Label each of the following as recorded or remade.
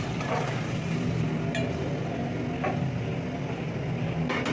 recorded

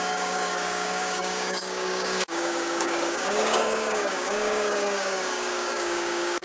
remade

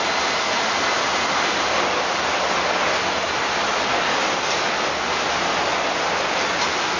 recorded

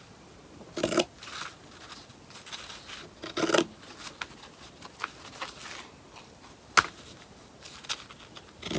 recorded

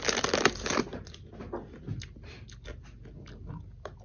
recorded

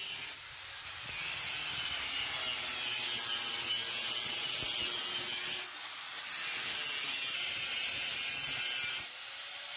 recorded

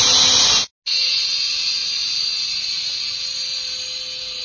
recorded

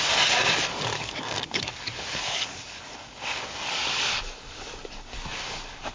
remade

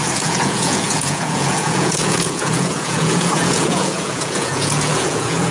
remade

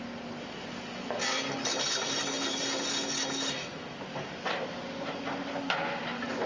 recorded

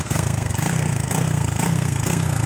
remade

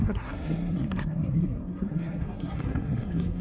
remade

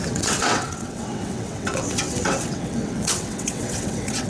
remade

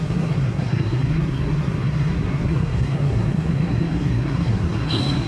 remade